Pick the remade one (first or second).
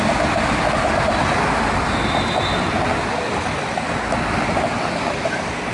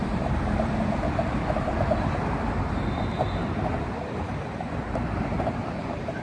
second